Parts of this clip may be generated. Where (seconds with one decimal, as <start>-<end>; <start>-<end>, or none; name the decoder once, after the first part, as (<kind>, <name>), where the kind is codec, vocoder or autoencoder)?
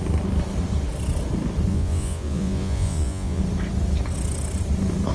1.7-3.4 (vocoder, Vocos)